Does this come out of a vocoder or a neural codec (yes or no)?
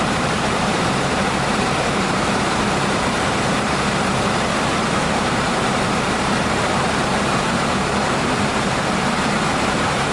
yes